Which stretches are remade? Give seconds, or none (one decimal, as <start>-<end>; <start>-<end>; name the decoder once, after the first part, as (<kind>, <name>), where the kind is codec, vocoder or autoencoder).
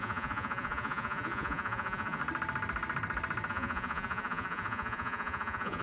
0.0-2.2 (vocoder, Vocos); 3.5-5.8